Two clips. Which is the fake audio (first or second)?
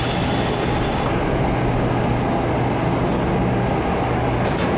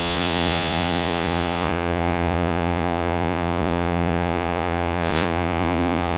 second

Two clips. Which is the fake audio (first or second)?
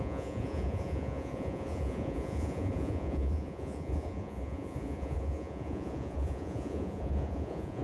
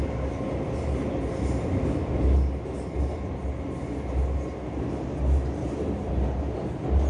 first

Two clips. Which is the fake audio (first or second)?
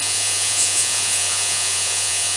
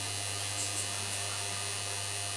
first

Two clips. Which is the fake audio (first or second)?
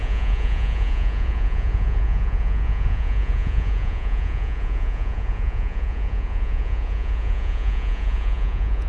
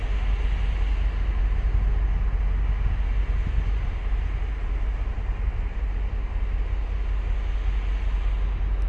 first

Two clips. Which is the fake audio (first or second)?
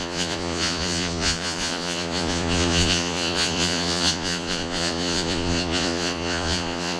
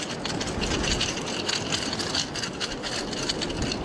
first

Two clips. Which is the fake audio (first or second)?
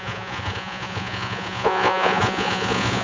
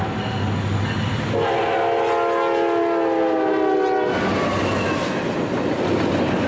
first